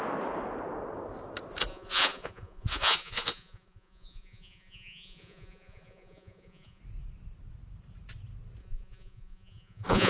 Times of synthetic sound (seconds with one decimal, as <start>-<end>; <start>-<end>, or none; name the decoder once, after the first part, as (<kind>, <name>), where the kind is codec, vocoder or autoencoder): 1.7-6.8 (vocoder, Vocos); 8.6-10.1